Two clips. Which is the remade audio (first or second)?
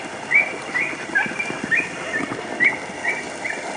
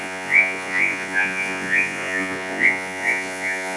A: second